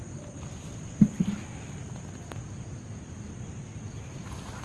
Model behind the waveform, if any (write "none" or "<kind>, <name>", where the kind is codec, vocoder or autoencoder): none